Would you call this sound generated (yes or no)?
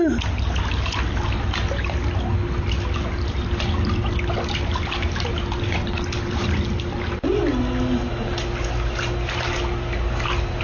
no